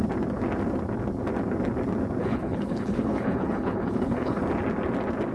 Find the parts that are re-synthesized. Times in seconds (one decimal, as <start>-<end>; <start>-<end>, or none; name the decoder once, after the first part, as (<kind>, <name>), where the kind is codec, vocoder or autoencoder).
2.2-4.4 (codec, HILCodec)